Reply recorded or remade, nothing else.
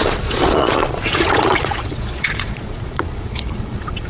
remade